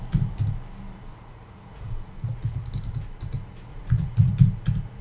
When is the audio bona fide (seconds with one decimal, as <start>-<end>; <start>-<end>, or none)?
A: 0.0-1.1; 2.7-3.7; 4.3-5.0